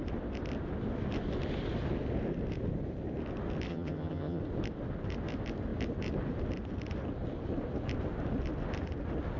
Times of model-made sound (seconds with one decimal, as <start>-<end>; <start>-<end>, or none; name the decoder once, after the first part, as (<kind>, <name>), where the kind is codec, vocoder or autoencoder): 3.7-4.4 (vocoder, HiFi-GAN)